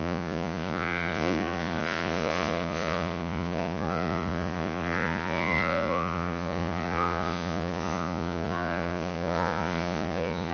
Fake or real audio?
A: fake